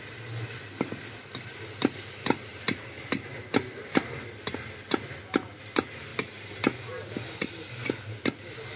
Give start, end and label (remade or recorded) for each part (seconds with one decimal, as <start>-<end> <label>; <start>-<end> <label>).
0.0-8.8 recorded